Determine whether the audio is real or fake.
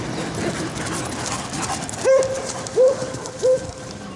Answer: real